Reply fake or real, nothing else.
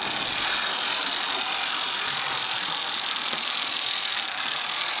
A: real